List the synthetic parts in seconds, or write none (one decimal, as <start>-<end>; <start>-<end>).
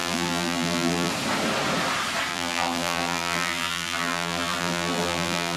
0.0-1.1; 2.3-5.6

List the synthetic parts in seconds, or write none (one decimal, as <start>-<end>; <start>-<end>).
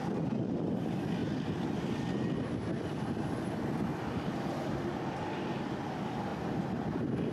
none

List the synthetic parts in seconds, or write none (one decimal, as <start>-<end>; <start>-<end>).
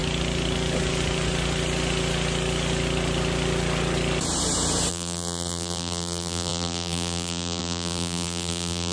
4.9-8.9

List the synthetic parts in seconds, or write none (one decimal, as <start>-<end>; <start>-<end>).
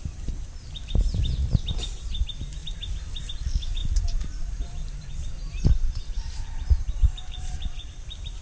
3.8-7.5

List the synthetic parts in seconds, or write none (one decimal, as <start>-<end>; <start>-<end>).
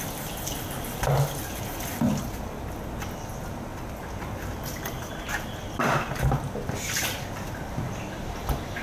3.7-8.8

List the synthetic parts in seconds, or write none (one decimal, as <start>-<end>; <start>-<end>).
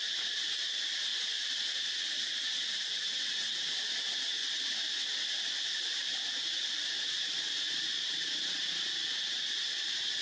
1.1-2.0; 4.4-8.7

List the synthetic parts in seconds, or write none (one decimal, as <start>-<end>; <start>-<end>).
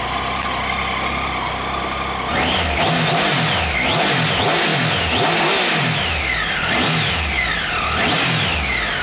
none